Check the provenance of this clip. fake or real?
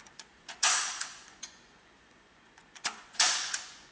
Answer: fake